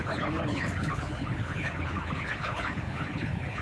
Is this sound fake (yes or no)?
yes